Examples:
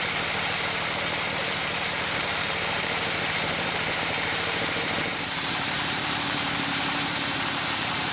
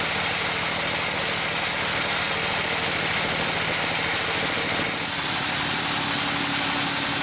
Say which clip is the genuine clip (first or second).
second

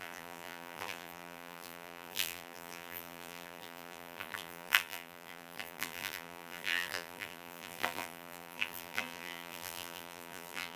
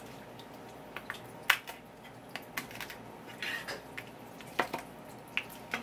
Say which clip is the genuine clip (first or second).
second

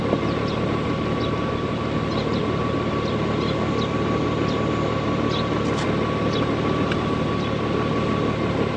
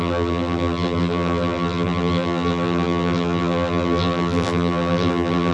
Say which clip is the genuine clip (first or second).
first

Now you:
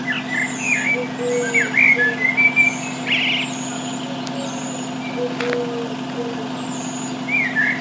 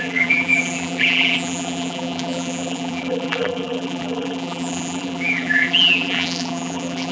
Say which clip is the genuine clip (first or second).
first